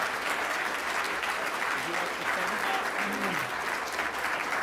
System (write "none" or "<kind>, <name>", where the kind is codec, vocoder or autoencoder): none